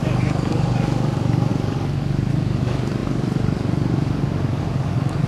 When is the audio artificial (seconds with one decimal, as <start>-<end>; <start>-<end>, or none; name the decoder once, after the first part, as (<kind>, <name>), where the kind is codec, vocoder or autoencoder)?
0.0-5.3 (codec, DAC)